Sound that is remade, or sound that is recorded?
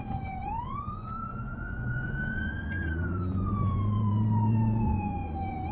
remade